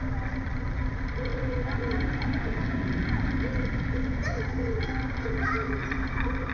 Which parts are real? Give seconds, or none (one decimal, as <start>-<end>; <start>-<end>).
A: 0.0-5.8